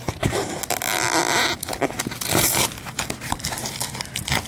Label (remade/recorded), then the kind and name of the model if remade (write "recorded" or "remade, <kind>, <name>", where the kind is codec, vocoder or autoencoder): recorded